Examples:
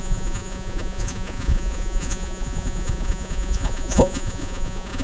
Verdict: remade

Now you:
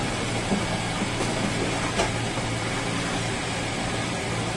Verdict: recorded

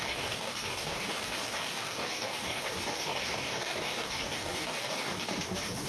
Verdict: remade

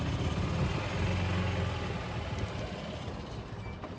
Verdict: recorded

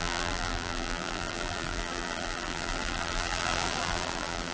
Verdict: remade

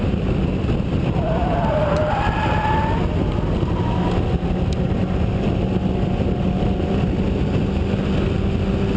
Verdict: recorded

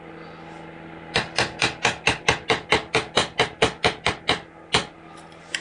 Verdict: recorded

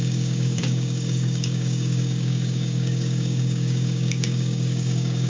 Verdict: remade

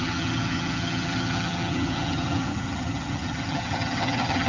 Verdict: remade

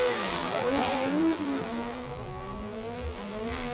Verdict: remade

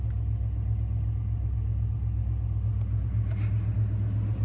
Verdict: recorded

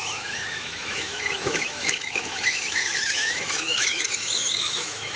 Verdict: remade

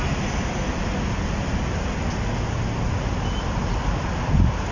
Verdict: recorded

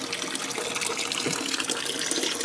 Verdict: recorded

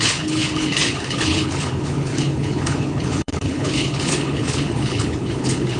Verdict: remade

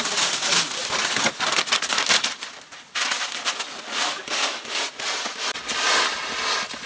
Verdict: recorded